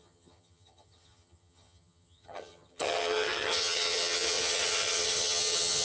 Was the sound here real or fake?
fake